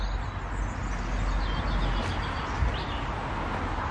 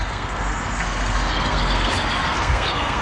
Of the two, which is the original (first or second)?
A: first